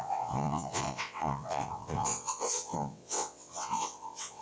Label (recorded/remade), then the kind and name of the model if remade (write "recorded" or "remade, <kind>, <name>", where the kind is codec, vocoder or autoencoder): remade, vocoder, WaveNeXt